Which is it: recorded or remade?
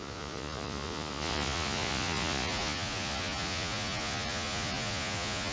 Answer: remade